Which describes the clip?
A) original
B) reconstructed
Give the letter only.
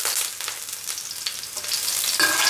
A